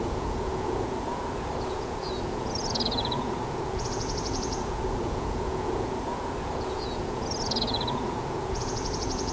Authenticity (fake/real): fake